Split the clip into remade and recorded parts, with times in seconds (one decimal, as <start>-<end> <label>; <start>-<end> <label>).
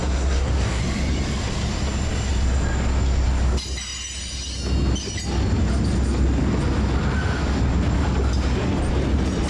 0.0-0.8 remade; 0.8-9.5 recorded